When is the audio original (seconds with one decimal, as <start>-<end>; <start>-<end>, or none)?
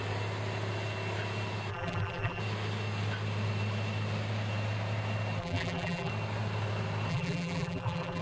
0.0-1.7; 2.4-5.4; 6.1-7.1